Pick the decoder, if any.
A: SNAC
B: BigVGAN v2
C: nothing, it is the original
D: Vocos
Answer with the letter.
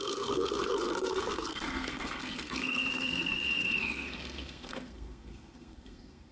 A